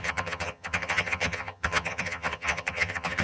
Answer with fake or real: fake